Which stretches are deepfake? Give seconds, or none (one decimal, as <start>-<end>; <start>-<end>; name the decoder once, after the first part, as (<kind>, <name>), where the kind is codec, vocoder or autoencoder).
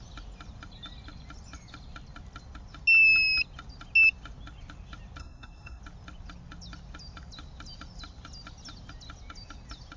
5.2-5.8 (codec, SNAC)